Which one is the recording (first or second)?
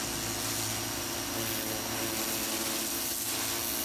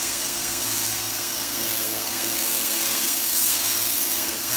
first